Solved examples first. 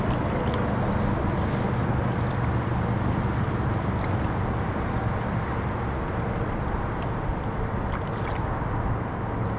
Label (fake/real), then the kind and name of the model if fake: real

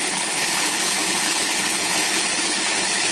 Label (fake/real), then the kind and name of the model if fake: fake, codec, HILCodec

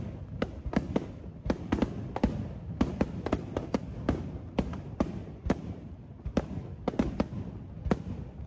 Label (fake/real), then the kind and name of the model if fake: real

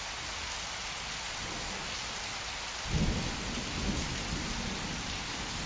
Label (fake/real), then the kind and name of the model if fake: real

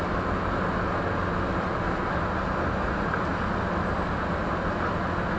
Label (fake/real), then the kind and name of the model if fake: real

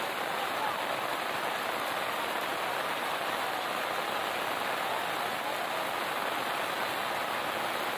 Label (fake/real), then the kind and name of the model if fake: real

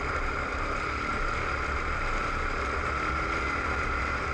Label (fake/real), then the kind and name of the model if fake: real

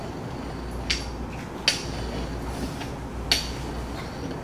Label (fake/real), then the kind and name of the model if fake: real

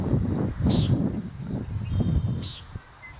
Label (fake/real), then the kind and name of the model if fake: real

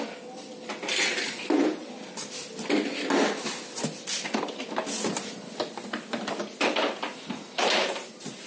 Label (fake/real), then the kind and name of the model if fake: real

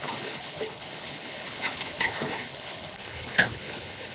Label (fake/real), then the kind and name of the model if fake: fake, codec, HILCodec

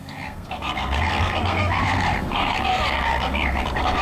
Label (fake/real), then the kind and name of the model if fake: fake, codec, SNAC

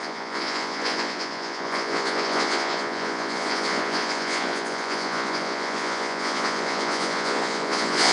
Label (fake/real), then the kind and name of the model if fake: fake, vocoder, Vocos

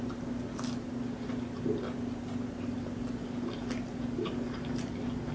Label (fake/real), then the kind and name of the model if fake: real